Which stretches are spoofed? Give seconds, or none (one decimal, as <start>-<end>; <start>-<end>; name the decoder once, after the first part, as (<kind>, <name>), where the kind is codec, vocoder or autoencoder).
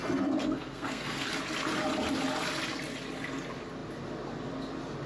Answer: 0.4-1.3 (codec, SNAC)